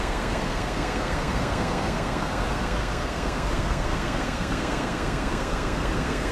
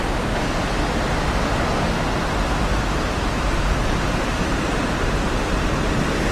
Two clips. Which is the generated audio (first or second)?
first